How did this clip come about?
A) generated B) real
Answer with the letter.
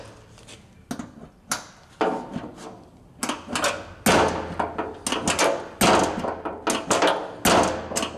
B